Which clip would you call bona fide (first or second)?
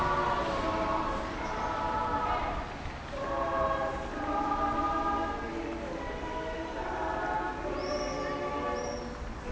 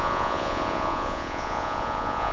first